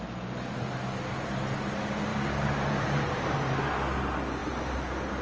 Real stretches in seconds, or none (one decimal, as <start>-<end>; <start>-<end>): 0.0-2.1; 3.6-5.2